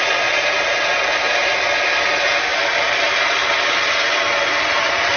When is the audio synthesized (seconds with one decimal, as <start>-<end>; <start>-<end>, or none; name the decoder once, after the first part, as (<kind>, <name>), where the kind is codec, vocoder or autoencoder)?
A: none